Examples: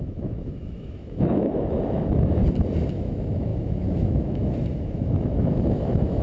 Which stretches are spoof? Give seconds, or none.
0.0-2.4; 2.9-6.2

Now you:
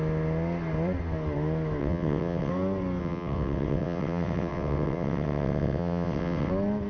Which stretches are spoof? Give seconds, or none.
1.8-2.5; 3.0-6.5

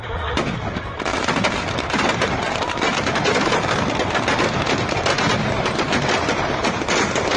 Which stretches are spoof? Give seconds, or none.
1.1-2.8